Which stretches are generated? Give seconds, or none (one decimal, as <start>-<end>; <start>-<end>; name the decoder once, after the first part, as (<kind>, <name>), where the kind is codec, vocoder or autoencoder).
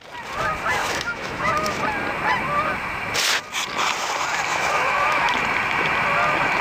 0.8-1.8 (autoencoder, DAC-VAE); 4.5-5.3